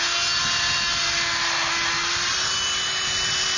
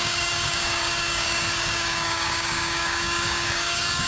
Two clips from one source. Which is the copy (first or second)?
second